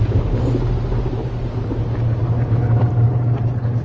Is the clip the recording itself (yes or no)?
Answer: yes